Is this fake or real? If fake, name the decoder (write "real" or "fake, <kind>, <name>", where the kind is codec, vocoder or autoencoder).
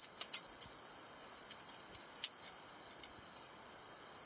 real